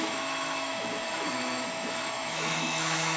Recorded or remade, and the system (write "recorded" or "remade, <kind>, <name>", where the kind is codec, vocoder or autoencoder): remade, autoencoder, DAC-VAE